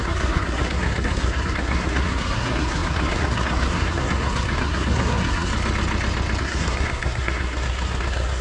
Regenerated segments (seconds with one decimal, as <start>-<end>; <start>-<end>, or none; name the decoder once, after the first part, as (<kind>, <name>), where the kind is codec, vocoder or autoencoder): 0.0-5.5 (codec, SNAC); 6.4-8.4